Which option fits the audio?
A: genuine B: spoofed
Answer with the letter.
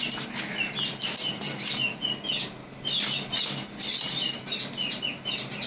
A